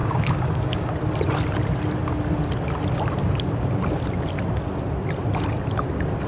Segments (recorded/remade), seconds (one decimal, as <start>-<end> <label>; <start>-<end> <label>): 0.0-0.9 remade; 0.9-6.3 recorded